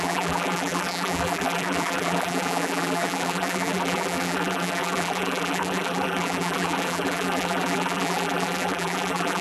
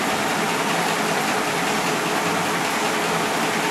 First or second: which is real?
second